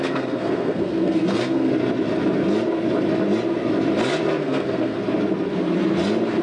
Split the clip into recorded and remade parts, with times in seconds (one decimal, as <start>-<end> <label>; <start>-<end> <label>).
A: 0.0-1.7 remade; 1.7-4.4 recorded; 4.4-5.0 remade; 5.0-6.4 recorded